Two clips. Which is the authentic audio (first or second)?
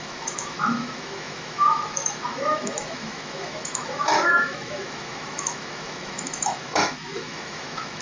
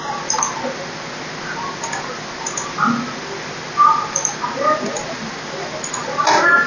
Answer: second